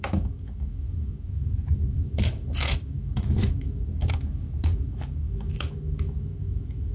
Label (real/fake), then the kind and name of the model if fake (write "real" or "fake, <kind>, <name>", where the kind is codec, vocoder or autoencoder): fake, autoencoder, DAC-VAE